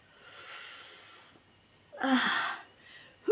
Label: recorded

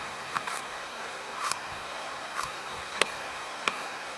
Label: remade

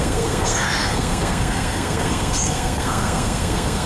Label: remade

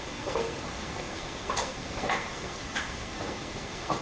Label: remade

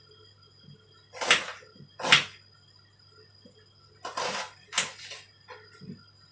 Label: recorded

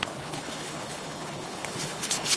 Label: remade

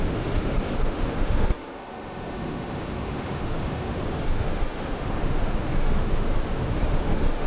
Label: remade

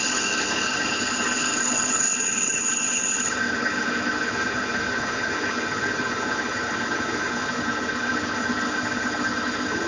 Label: remade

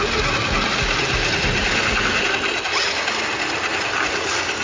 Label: recorded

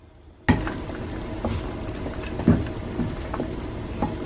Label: recorded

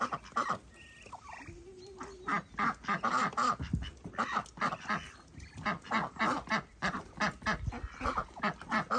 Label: recorded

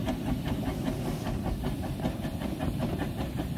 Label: recorded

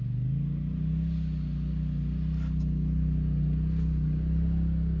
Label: recorded